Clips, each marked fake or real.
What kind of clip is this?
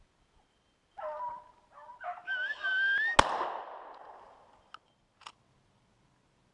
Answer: real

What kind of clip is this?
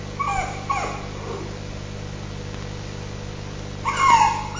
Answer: real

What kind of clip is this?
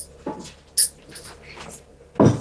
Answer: real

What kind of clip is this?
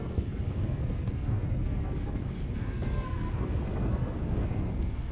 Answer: fake